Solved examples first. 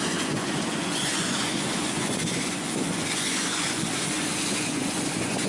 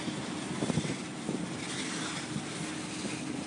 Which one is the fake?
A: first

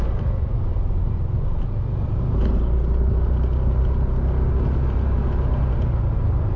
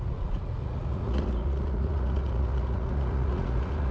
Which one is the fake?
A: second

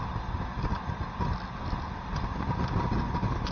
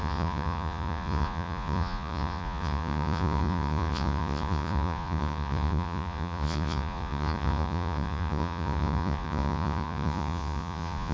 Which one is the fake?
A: second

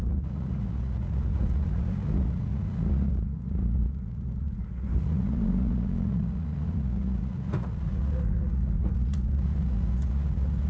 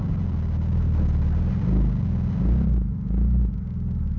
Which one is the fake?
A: first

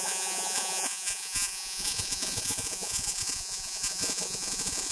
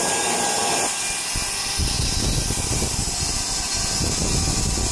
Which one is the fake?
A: first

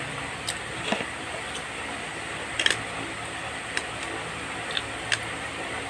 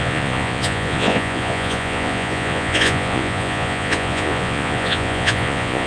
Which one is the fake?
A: second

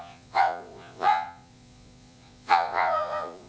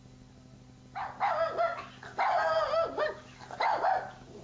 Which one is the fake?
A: first